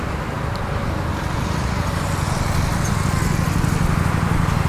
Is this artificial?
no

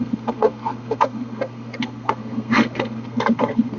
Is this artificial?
yes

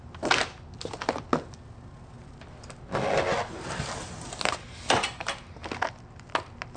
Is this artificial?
no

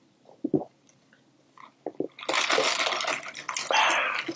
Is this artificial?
no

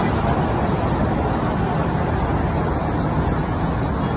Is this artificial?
no